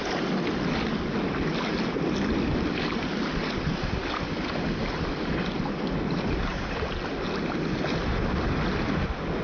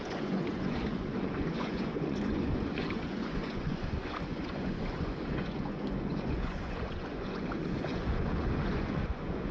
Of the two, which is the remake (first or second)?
second